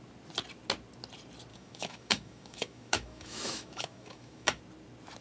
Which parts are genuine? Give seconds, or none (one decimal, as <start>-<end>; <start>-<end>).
0.0-1.5; 4.6-5.2